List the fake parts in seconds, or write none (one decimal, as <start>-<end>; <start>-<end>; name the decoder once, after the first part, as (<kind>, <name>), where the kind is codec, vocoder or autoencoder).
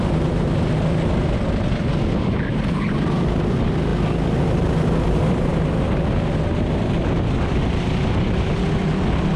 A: none